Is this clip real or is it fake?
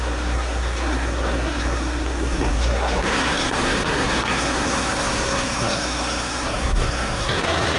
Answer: fake